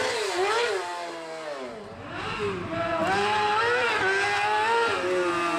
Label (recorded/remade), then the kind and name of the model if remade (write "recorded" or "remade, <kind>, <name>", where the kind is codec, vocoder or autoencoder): recorded